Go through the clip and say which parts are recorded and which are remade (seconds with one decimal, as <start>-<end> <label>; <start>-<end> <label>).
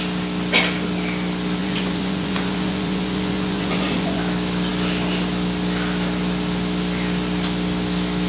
0.0-1.6 recorded; 1.6-4.2 remade; 4.2-8.3 recorded